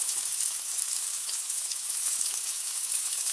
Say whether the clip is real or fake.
fake